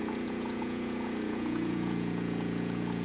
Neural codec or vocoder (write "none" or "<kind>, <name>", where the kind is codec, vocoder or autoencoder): vocoder, Vocos